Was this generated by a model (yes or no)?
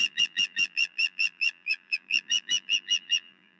yes